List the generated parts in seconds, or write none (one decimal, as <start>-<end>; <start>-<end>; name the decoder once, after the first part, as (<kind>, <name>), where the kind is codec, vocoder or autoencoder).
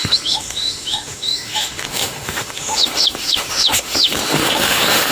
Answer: 0.0-5.1 (autoencoder, DAC-VAE)